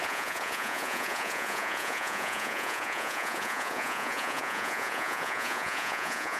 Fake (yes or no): yes